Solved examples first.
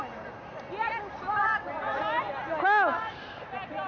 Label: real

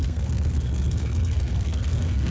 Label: fake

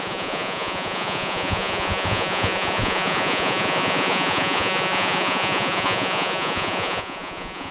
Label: fake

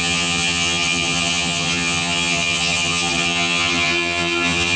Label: fake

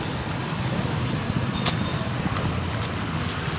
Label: real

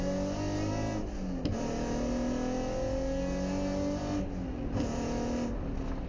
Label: real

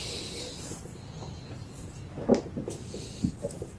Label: real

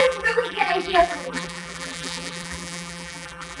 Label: fake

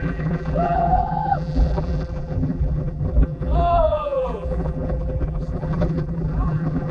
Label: fake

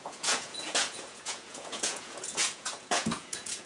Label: fake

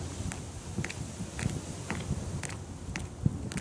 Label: real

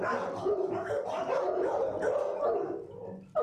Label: real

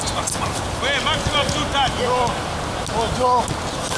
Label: real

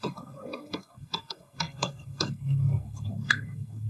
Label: fake